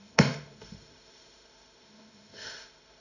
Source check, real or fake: fake